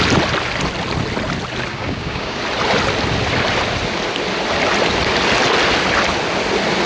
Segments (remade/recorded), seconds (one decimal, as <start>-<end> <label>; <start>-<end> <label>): 0.0-1.7 recorded; 1.7-2.4 remade; 2.4-6.9 recorded